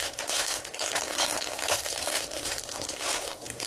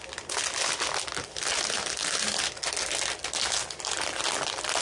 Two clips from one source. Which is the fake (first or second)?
first